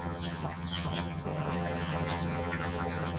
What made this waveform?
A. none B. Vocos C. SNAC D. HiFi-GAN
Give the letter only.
D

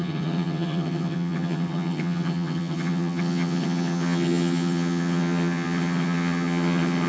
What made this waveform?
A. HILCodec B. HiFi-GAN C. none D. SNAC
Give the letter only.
B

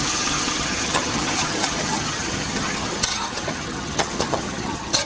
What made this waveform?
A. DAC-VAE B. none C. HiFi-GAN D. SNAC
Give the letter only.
C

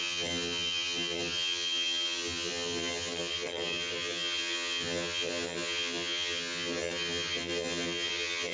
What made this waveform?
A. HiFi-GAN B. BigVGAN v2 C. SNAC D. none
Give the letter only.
A